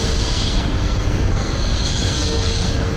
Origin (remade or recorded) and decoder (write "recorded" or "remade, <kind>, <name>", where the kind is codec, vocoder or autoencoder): remade, codec, SNAC